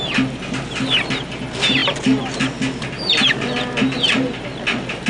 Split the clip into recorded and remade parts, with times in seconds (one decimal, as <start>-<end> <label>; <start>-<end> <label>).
0.0-5.1 recorded